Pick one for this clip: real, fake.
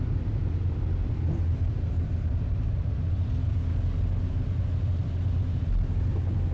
real